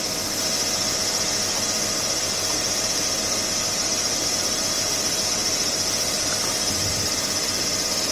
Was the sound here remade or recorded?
remade